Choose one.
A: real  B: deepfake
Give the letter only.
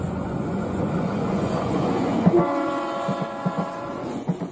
B